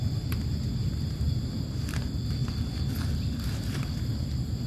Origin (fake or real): real